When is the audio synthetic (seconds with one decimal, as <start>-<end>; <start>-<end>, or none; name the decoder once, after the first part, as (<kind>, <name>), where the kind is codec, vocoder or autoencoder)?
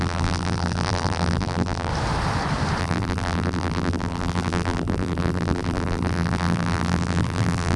0.0-1.9 (vocoder, BigVGAN v2); 2.8-7.8